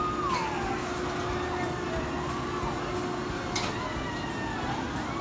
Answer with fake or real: real